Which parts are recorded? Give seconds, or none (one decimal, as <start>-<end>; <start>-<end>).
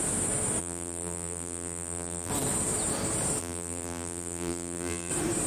0.0-0.6; 2.3-3.4; 5.1-5.5